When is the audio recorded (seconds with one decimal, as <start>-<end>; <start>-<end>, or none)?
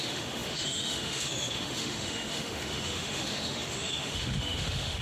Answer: none